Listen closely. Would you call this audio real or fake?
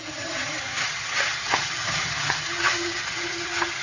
fake